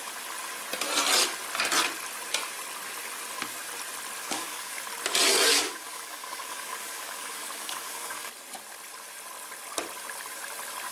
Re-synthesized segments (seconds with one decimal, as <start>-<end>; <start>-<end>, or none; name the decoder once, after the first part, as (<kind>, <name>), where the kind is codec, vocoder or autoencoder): 4.2-4.8 (codec, DAC); 5.5-8.3